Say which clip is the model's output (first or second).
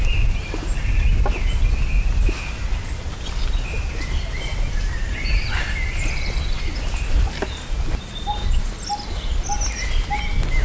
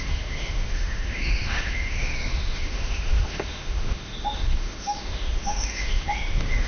second